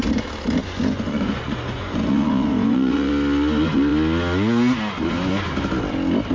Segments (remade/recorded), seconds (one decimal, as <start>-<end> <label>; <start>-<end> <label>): 0.0-0.6 recorded; 0.6-3.1 remade; 3.1-6.3 recorded